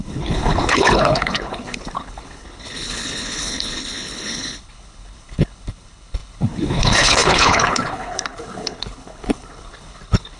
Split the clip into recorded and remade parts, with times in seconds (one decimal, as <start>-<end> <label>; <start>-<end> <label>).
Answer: 0.0-10.4 remade